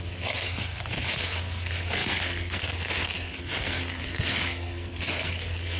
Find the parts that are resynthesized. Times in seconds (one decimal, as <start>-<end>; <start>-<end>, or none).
0.0-5.8